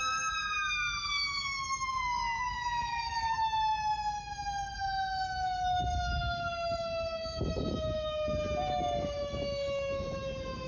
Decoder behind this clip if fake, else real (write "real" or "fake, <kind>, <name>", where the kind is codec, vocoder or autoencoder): fake, autoencoder, DAC-VAE